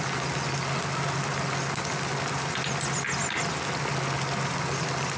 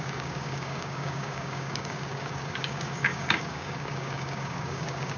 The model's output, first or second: second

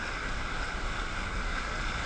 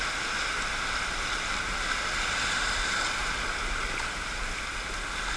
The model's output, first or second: first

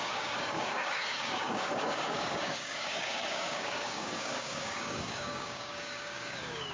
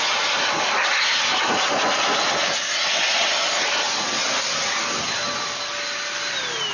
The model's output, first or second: first